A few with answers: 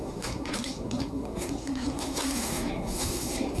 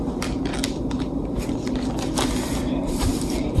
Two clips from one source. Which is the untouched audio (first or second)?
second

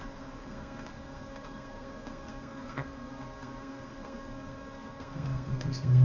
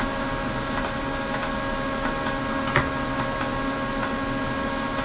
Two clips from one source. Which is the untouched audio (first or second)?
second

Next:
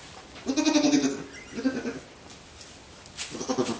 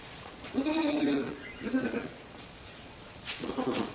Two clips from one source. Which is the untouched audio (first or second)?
first